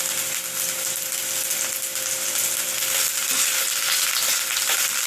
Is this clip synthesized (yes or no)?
no